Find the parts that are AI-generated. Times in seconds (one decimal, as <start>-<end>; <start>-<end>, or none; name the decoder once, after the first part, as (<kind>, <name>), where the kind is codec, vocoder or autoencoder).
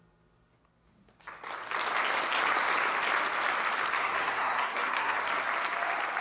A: 4.0-5.2 (codec, SNAC)